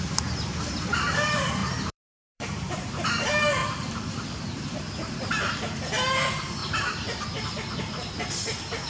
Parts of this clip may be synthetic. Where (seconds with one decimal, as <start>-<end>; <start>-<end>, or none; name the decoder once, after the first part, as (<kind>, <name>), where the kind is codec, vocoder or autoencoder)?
1.6-3.1 (vocoder, BigVGAN v2); 3.6-5.3